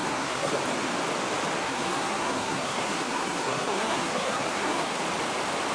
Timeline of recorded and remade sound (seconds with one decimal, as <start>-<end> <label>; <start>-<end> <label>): 0.0-0.5 remade; 0.5-1.6 recorded; 1.6-5.0 remade; 5.0-5.7 recorded